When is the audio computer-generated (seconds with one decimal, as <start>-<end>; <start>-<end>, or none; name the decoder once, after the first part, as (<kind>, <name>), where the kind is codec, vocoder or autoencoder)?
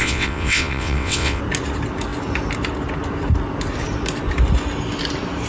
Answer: 0.0-1.4 (vocoder, WaveNeXt)